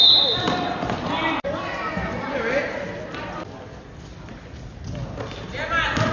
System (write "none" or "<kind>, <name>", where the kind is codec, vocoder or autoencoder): none